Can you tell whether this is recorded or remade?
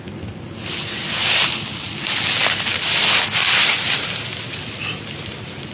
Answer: recorded